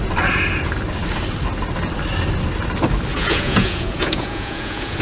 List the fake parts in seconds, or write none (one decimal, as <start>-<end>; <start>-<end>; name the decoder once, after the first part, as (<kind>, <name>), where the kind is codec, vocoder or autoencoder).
3.1-5.0 (vocoder, Vocos)